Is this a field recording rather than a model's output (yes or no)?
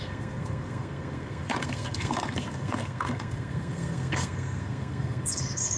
no